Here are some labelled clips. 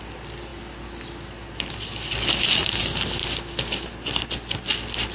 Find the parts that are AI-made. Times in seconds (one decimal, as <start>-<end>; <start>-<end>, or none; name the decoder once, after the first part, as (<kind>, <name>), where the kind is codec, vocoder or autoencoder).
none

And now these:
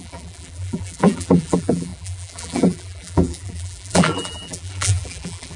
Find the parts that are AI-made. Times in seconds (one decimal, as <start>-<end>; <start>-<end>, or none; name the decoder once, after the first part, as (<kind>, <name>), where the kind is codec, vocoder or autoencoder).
0.0-5.6 (vocoder, BigVGAN v2)

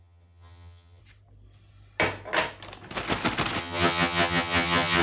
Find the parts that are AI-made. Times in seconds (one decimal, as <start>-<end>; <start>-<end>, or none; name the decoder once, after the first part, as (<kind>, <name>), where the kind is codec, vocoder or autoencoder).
0.0-1.0 (vocoder, HiFi-GAN); 3.6-5.0

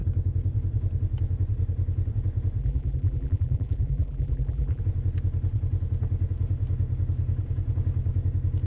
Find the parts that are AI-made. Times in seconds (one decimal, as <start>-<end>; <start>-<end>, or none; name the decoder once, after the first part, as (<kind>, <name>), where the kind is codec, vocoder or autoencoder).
2.6-4.8 (vocoder, BigVGAN v2)

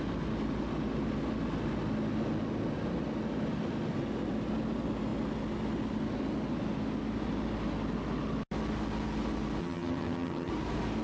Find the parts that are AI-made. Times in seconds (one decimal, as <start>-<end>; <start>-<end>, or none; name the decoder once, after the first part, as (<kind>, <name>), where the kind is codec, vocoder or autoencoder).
9.6-10.5 (vocoder, HiFi-GAN)

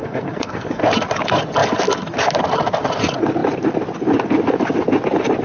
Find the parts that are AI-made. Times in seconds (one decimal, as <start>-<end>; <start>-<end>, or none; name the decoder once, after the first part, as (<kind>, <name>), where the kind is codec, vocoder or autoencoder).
0.0-0.8 (codec, SNAC)

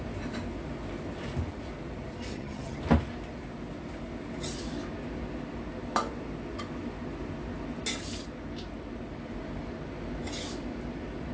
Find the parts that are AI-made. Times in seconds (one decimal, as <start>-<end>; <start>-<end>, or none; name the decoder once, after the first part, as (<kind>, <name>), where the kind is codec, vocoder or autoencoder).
2.3-2.8 (vocoder, HiFi-GAN)

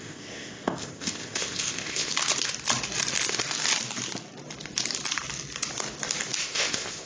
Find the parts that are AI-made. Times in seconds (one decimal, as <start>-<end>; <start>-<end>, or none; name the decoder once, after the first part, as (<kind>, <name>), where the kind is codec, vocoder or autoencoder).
0.0-2.1 (codec, ZipCodec); 6.4-7.1